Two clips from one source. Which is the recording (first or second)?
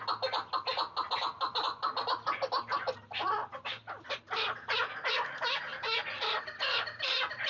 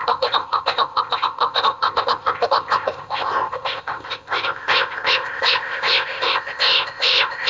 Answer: first